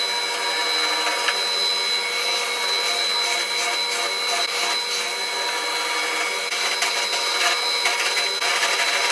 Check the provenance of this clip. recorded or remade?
recorded